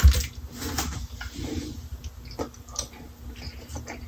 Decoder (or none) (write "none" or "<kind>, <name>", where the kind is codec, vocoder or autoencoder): none